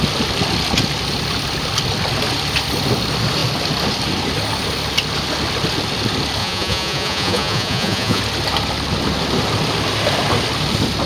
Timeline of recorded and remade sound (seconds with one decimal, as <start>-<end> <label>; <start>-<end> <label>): 0.0-6.4 recorded; 6.4-8.2 remade; 8.2-11.1 recorded